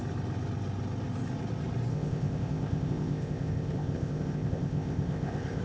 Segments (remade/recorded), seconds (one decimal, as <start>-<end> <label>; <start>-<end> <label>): 0.0-1.9 recorded; 1.9-5.6 remade